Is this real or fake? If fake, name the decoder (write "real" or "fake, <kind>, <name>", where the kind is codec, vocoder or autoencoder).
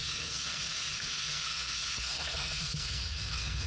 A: fake, codec, SNAC